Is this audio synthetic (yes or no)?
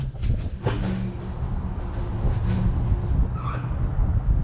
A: no